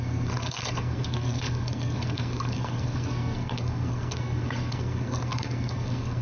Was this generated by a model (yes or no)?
yes